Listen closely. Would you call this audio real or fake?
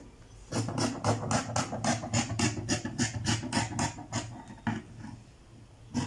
real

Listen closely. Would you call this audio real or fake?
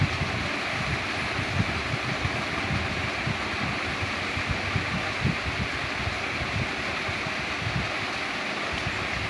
real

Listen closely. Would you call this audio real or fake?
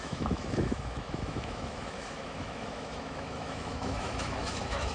fake